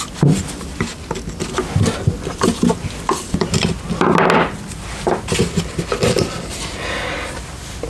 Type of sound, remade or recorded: recorded